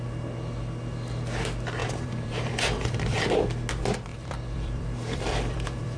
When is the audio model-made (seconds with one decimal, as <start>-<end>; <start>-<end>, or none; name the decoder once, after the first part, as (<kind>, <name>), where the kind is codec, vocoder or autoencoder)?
1.8-3.3 (vocoder, BigVGAN v2); 4.1-6.0